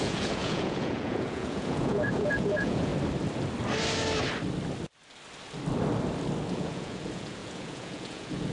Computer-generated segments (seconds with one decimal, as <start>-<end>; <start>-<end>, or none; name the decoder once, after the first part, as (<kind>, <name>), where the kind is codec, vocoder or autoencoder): 0.0-2.9 (vocoder, Vocos); 6.5-8.5

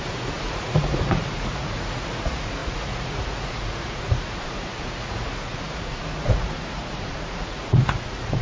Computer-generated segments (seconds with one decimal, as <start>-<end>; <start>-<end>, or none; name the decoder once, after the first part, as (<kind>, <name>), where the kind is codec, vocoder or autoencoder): 0.0-8.4 (vocoder, Vocos)

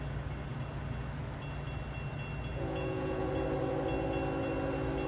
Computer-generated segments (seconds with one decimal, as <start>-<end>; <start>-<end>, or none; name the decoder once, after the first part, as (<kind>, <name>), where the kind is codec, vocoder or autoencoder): 2.5-3.3 (vocoder, Vocos)

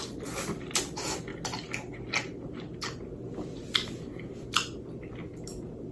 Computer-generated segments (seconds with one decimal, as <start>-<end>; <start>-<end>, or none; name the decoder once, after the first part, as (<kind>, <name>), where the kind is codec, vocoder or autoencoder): none

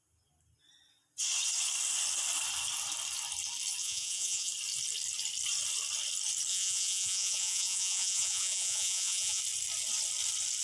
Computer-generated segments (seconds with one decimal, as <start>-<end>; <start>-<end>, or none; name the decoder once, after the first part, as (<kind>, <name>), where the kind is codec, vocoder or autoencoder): 3.8-4.5 (vocoder, Vocos); 6.5-9.4